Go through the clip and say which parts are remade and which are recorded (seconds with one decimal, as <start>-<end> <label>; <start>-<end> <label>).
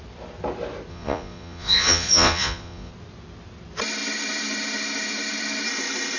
0.0-0.9 recorded; 0.9-2.9 remade; 2.9-6.2 recorded